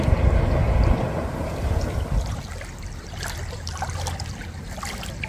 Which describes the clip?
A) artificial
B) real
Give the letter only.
B